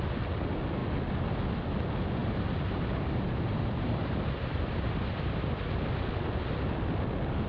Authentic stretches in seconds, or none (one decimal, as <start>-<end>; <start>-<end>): 0.0-2.2; 5.9-7.5